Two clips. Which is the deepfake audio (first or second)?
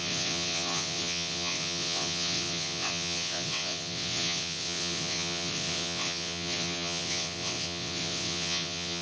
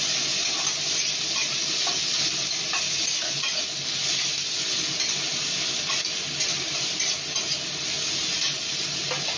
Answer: first